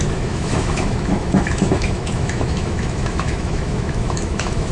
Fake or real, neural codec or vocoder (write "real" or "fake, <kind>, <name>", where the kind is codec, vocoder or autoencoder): fake, autoencoder, DAC-VAE